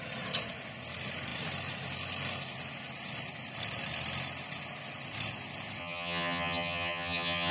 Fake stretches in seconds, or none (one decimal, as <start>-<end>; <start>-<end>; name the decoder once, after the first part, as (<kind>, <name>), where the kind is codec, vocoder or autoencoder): 5.8-7.5 (vocoder, HiFi-GAN)